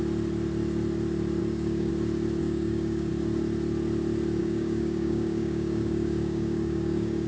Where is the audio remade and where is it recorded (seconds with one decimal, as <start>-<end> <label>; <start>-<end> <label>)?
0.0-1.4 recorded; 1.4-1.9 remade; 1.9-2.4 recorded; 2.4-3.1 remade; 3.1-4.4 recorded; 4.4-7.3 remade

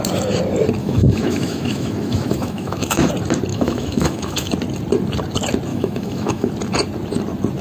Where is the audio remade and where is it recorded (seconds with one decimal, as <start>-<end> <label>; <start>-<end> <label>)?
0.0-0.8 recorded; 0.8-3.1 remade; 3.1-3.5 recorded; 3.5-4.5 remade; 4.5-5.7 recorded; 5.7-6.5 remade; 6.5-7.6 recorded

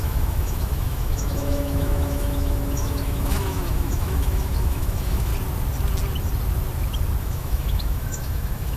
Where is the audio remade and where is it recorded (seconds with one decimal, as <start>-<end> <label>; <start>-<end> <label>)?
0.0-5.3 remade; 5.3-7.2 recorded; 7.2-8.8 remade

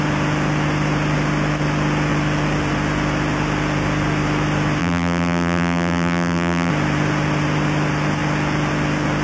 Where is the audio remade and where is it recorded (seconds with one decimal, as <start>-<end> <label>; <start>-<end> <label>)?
0.0-4.8 recorded; 4.8-6.7 remade; 6.7-9.2 recorded

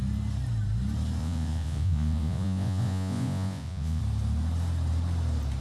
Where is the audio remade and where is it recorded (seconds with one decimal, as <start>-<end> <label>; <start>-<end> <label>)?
0.0-1.2 recorded; 1.2-4.0 remade; 4.0-5.6 recorded

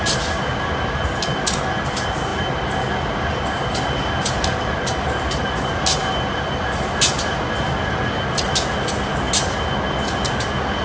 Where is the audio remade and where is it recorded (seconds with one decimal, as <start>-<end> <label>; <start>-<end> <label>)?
0.0-10.8 recorded

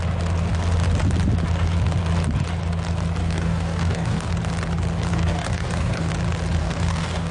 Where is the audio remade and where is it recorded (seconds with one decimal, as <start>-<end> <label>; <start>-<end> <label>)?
0.0-3.2 recorded; 3.2-4.3 remade; 4.3-5.1 recorded; 5.1-6.1 remade; 6.1-6.6 recorded; 6.6-7.3 remade

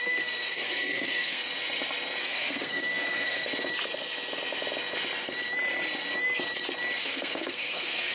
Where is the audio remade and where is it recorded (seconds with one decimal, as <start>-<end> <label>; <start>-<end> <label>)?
0.0-1.5 remade; 1.5-2.2 recorded; 2.2-3.5 remade; 3.5-7.0 recorded; 7.0-8.1 remade